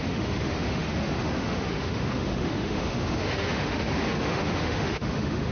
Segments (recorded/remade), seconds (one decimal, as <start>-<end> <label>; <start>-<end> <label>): 0.0-5.5 remade